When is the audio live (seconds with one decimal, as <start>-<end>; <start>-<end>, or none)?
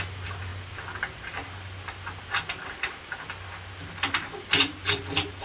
0.0-5.4